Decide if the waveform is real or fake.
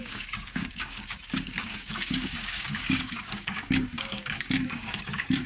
fake